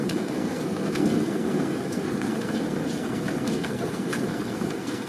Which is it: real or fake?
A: fake